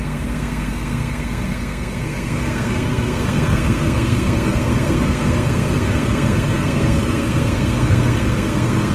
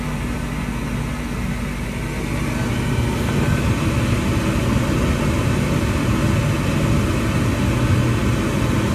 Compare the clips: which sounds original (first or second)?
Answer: second